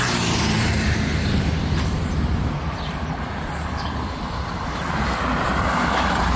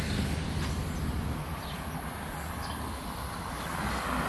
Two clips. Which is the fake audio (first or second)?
first